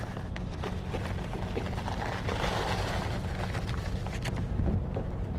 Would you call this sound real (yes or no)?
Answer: yes